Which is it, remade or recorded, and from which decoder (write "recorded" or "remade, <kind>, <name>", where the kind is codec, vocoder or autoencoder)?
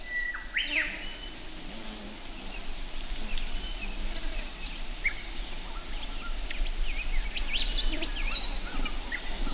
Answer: recorded